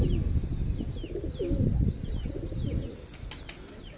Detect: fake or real real